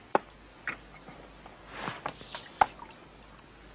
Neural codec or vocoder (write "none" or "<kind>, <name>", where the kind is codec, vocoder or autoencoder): none